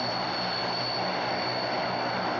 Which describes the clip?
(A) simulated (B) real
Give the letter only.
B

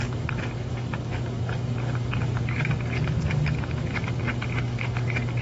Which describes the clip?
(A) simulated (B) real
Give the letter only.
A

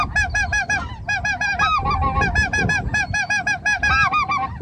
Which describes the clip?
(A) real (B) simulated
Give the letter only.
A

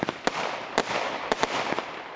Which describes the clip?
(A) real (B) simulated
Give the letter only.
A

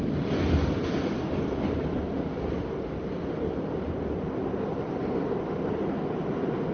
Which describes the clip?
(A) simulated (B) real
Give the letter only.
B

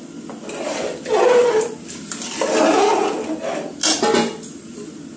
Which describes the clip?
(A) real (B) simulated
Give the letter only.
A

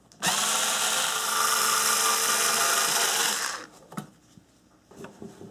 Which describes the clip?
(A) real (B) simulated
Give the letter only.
A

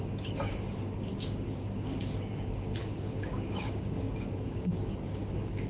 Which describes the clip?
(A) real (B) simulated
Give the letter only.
B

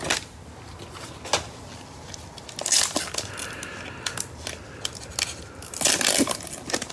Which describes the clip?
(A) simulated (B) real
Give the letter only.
B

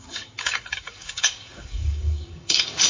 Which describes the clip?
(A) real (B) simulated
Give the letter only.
B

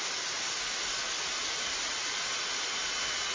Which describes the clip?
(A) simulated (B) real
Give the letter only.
B